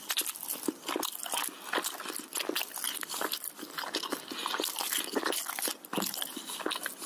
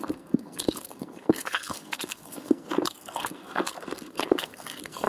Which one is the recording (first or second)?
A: first